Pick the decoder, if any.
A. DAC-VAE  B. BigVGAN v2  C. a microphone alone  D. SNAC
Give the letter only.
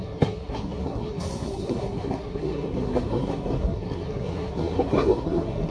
D